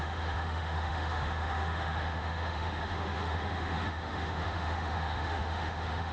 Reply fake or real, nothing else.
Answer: fake